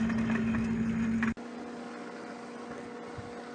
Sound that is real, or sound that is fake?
real